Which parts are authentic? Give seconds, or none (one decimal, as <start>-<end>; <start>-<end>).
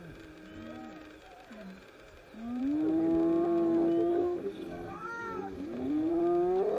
0.0-4.1; 6.1-6.8